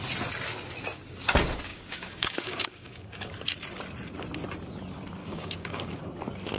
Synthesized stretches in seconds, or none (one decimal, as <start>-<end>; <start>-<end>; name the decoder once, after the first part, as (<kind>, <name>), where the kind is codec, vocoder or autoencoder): 1.7-3.3 (codec, DAC); 5.2-6.0